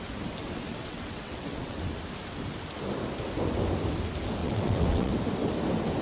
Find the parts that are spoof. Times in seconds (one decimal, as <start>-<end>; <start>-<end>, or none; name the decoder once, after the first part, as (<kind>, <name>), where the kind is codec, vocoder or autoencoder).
0.7-1.9 (vocoder, WaveNeXt); 4.4-5.1